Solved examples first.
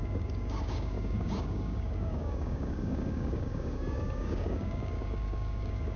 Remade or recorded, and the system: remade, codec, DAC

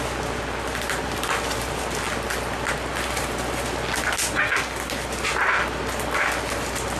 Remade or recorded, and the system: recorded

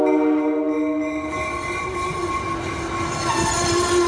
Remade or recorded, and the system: recorded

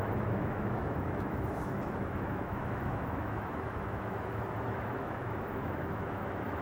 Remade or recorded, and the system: remade, autoencoder, DAC-VAE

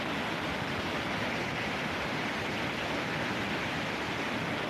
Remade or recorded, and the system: recorded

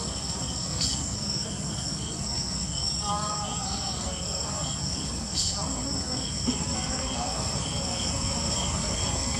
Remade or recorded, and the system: remade, codec, SNAC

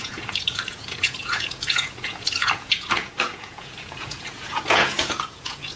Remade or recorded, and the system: remade, vocoder, Vocos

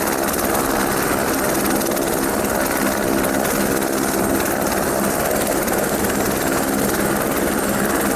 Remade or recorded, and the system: recorded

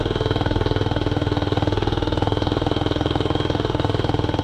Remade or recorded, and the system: remade, autoencoder, DAC-VAE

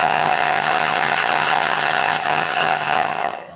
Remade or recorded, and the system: remade, vocoder, HiFi-GAN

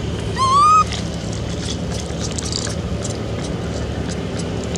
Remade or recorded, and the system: recorded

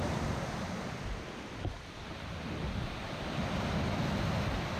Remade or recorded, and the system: recorded